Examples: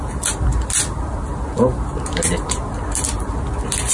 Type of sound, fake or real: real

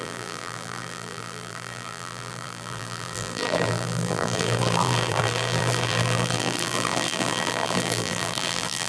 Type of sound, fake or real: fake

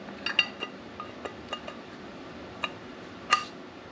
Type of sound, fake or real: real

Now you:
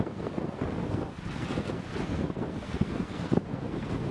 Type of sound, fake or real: fake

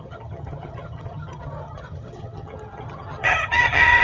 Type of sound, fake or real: fake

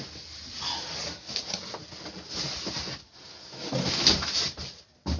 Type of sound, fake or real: real